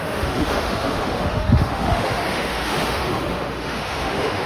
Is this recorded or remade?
remade